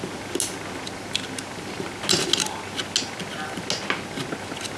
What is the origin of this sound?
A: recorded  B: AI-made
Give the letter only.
A